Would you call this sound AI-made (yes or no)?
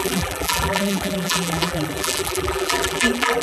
yes